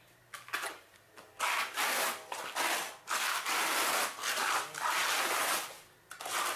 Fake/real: real